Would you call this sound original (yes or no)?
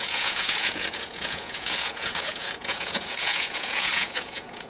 no